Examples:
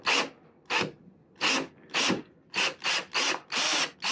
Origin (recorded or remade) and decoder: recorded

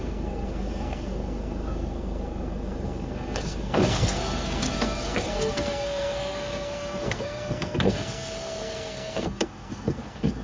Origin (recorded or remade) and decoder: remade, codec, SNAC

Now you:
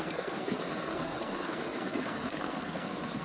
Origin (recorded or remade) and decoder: remade, codec, SNAC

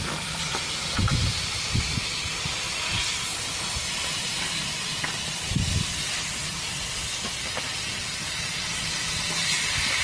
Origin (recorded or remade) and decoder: recorded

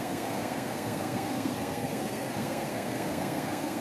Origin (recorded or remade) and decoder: remade, codec, SNAC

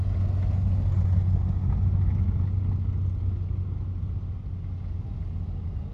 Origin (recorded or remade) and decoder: recorded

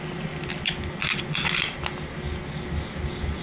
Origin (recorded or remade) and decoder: recorded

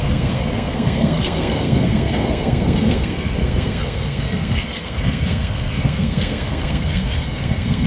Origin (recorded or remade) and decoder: remade, codec, SNAC